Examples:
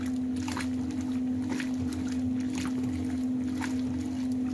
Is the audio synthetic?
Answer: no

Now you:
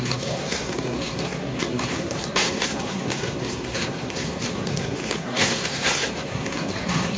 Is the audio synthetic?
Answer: yes